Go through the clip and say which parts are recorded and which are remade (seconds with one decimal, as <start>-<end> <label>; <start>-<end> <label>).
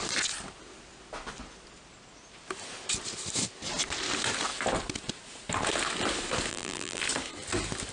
0.0-6.5 recorded; 6.5-7.0 remade; 7.0-7.9 recorded